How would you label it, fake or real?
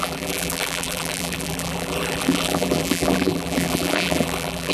fake